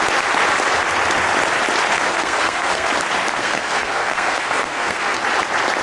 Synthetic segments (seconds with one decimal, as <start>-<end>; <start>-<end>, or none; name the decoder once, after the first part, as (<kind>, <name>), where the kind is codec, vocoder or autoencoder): 2.1-2.9 (codec, SNAC); 3.4-5.2